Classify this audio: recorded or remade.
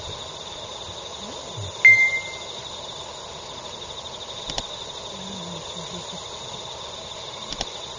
recorded